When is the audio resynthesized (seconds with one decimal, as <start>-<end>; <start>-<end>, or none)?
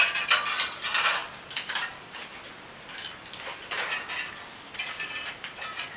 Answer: none